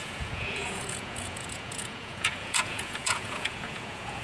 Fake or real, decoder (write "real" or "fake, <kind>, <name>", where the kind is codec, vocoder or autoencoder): fake, vocoder, Vocos